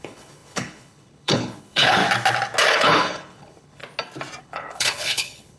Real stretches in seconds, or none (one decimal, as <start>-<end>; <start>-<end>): 2.0-2.7; 3.8-4.4

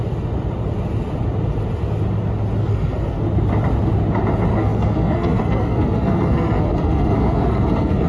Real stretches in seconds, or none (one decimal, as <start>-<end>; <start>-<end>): 0.0-2.6; 3.2-4.5

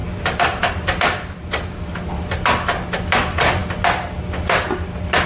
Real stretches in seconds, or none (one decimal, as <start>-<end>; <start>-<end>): 2.1-5.3

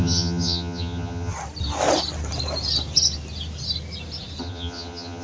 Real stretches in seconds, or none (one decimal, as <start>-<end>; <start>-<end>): 1.3-4.4

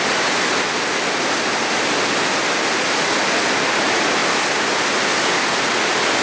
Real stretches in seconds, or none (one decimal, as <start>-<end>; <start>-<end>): 0.0-6.2

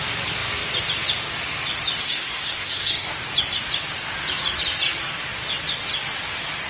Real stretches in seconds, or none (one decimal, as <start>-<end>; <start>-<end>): 0.0-2.0; 3.1-6.7

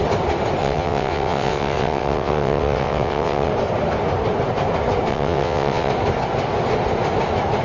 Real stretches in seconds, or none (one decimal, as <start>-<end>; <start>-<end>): 0.0-0.6; 3.5-5.1; 5.9-7.6

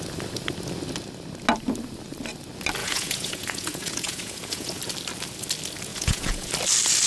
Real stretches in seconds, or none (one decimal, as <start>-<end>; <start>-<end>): 0.0-2.8; 4.8-5.9; 6.5-7.1